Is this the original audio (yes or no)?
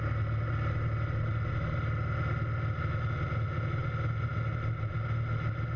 yes